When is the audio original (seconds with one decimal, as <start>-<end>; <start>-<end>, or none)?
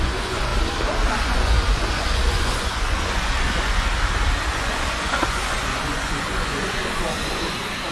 0.5-1.1; 3.9-4.5